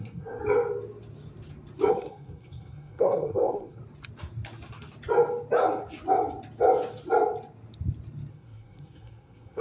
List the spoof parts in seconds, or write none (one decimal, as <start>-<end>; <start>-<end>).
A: 0.0-0.4; 1.9-3.8; 8.3-9.6